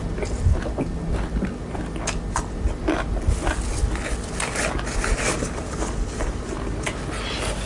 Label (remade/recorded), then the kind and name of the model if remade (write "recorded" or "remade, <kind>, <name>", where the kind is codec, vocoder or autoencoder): recorded